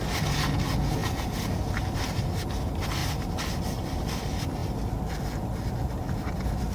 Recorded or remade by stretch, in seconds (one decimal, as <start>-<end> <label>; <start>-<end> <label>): 0.0-6.7 recorded